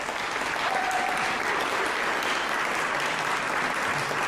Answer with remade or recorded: recorded